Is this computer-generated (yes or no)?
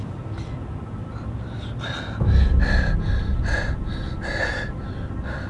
no